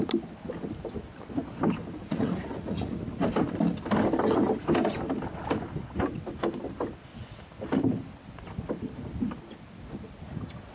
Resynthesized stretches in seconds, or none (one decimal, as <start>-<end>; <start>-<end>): 2.0-3.0